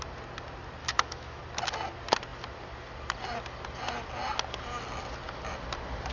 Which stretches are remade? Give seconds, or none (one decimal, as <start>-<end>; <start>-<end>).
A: 0.8-1.4